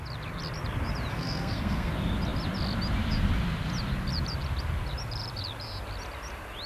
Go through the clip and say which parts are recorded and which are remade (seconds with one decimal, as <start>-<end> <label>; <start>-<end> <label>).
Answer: 0.0-1.1 recorded; 1.1-1.9 remade; 1.9-6.7 recorded